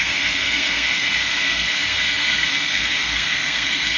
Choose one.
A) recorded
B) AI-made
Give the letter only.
B